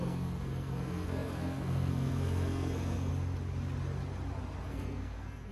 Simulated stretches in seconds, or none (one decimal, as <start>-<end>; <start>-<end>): 0.0-3.1; 4.7-5.5